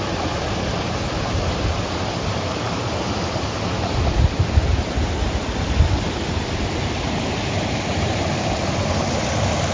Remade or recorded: recorded